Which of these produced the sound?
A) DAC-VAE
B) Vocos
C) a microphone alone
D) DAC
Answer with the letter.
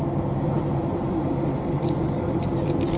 C